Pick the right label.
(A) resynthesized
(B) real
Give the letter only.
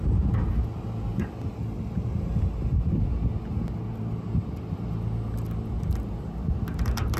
B